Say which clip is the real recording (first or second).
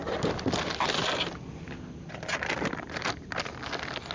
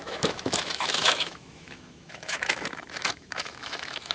first